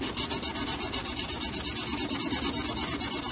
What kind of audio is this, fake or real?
real